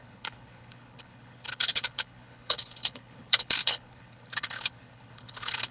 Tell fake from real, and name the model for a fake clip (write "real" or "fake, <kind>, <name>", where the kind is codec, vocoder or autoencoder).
fake, codec, HILCodec